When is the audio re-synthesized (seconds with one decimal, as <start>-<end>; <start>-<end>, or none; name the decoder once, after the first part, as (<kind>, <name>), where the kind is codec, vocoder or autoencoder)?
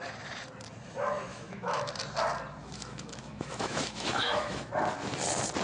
1.3-1.9 (autoencoder, DAC-VAE); 2.6-4.7